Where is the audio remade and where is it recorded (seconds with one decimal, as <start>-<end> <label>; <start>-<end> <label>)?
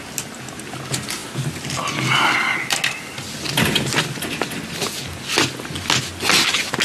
0.0-6.8 recorded